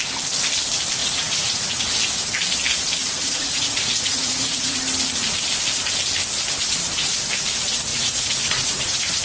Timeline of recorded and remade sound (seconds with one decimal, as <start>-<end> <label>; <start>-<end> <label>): 0.0-1.0 recorded; 1.0-1.8 remade; 1.8-3.0 recorded; 3.0-4.8 remade; 4.8-7.9 recorded; 7.9-9.2 remade